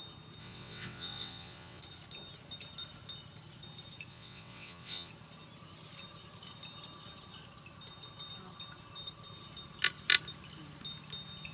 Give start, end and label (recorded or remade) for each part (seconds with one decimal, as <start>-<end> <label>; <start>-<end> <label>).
0.0-0.4 recorded; 0.4-1.8 remade; 1.8-4.1 recorded; 4.1-5.1 remade; 5.1-11.5 recorded